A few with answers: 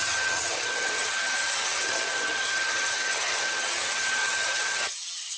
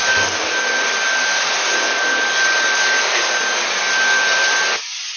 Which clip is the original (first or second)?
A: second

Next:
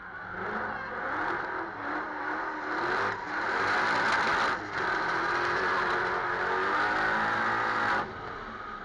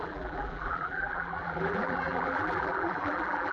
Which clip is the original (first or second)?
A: first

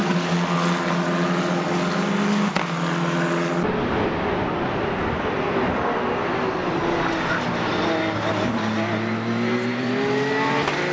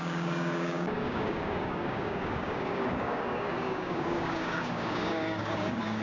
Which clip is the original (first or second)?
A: first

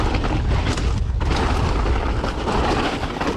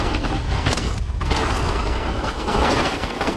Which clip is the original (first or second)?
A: first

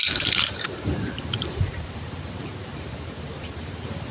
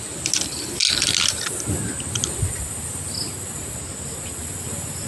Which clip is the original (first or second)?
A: second